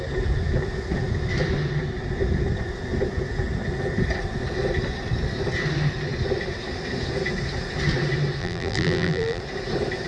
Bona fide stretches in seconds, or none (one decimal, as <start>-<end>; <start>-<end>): 0.0-8.4; 9.4-10.1

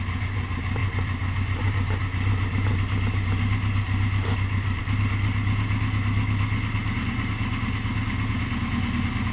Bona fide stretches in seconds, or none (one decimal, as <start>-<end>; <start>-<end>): 0.0-9.3

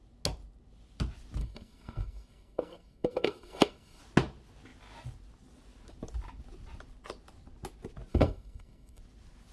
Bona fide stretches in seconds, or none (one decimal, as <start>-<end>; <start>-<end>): 0.0-1.4; 4.0-8.1; 9.0-9.5